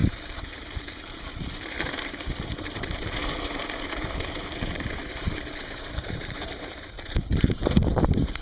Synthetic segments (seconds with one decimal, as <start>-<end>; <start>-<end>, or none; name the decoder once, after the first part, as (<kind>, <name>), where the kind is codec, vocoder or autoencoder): 0.0-8.4 (vocoder, BigVGAN v2)